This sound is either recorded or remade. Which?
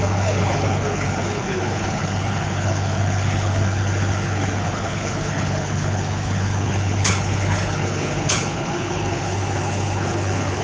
remade